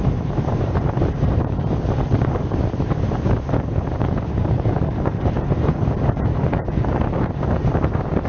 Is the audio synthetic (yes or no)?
yes